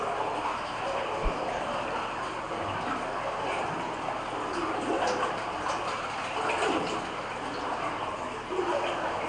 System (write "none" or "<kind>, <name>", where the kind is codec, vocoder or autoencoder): none